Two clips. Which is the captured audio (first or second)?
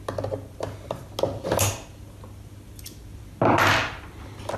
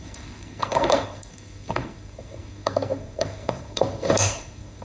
first